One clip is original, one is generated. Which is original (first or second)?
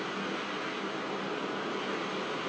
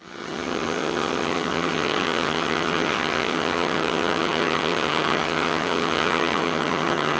first